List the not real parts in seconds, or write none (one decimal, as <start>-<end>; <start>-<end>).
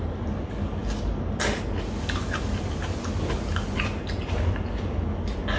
none